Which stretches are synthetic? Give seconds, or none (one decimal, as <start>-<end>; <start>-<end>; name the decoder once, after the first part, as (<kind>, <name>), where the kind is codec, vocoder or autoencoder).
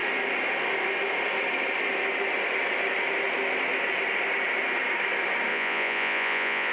5.5-6.7 (vocoder, Vocos)